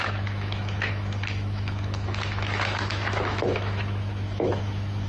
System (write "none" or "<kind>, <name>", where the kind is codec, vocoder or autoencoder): autoencoder, DAC-VAE